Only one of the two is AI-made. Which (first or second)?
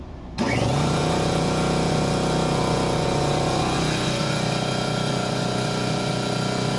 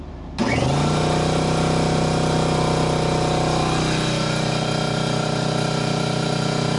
first